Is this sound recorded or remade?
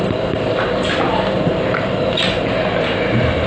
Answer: recorded